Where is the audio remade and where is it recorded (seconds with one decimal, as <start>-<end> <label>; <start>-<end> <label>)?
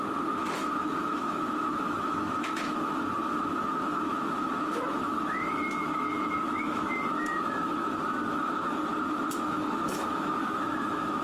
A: 0.0-11.2 remade